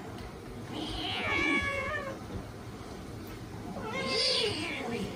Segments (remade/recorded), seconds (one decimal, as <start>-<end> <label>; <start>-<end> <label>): 0.0-1.1 recorded; 1.1-1.9 remade; 1.9-5.2 recorded